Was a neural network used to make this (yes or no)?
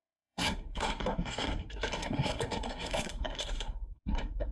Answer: yes